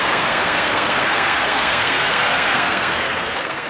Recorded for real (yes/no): no